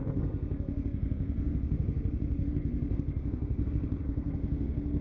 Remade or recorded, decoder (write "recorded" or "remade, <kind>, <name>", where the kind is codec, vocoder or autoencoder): remade, codec, SNAC